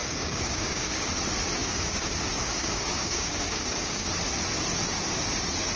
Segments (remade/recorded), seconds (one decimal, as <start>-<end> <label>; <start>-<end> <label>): 0.0-1.1 remade; 1.1-1.6 recorded; 1.6-4.1 remade; 4.1-5.8 recorded